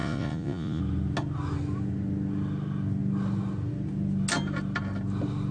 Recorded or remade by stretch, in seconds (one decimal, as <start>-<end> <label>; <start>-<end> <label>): 0.0-0.8 remade; 0.8-5.5 recorded